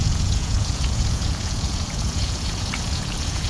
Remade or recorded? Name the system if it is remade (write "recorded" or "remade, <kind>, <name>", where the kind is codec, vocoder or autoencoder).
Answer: remade, vocoder, Vocos